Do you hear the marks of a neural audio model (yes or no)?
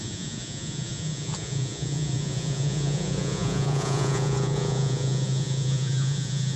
yes